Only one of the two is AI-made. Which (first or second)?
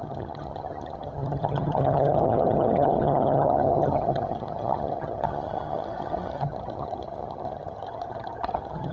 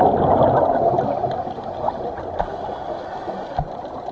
first